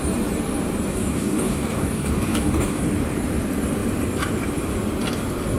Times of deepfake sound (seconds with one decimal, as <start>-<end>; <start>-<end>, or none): 0.9-2.8